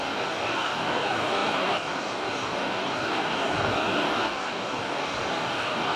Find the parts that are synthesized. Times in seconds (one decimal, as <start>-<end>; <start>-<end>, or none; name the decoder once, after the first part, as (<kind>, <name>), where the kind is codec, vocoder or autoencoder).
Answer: 0.0-6.0 (codec, DAC)